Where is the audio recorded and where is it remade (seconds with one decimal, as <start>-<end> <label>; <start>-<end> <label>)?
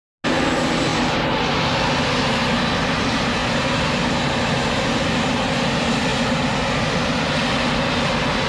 0.0-8.5 recorded